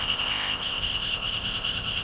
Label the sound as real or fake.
fake